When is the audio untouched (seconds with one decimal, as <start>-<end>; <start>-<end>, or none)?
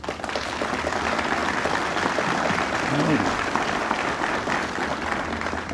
0.0-5.7